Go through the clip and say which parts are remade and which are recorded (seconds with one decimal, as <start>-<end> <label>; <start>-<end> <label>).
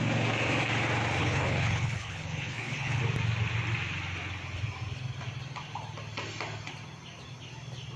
0.0-1.2 recorded; 1.2-3.0 remade; 3.0-8.0 recorded